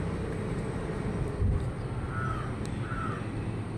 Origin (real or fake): real